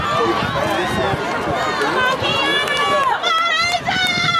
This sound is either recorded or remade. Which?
recorded